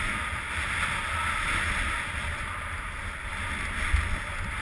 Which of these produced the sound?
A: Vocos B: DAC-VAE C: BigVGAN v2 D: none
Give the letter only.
D